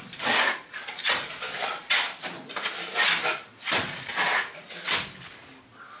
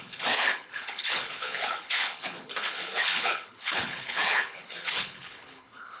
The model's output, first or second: second